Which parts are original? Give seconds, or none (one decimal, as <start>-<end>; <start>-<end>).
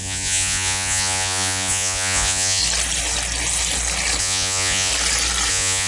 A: 2.6-4.2; 4.9-5.5